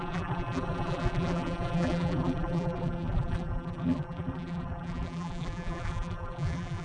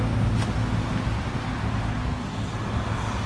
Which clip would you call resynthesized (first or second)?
first